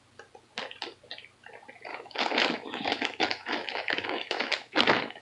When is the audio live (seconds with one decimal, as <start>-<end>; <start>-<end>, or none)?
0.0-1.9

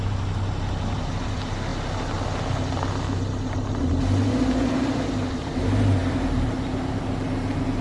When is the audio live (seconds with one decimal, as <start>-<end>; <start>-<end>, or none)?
0.0-7.8

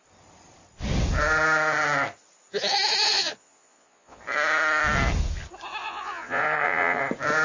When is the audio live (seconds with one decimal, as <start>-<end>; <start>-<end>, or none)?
0.0-3.0; 4.2-5.8; 7.0-7.4

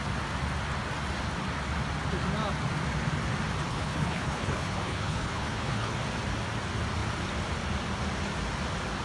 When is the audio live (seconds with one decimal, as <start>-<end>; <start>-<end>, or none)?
0.0-3.7; 5.9-9.0

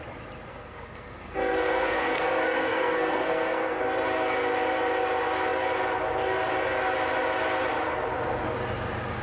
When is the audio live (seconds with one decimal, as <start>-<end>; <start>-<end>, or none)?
0.0-0.5; 3.8-9.2